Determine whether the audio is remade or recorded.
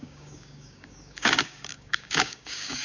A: remade